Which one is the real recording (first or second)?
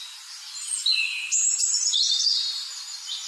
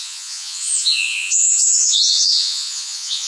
first